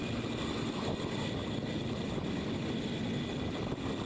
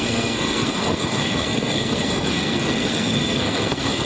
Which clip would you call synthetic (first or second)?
second